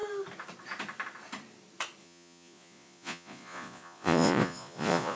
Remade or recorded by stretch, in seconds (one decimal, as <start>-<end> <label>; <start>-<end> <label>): 0.0-2.0 recorded; 2.0-5.2 remade